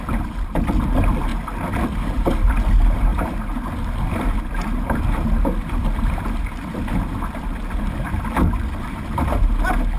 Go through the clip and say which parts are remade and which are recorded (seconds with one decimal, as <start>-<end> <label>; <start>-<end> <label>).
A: 0.0-1.3 remade; 1.3-2.3 recorded; 2.3-10.0 remade